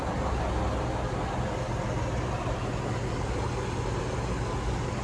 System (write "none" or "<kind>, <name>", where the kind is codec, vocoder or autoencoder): none